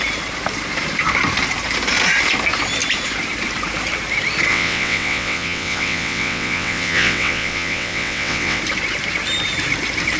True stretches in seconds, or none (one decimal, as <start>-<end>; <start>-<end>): 0.0-4.5; 8.6-10.2